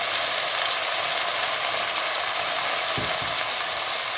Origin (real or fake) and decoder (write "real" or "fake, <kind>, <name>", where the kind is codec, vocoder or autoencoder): real